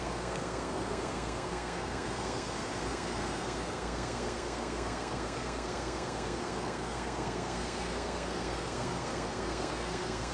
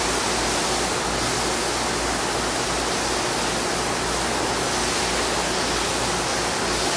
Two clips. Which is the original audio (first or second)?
second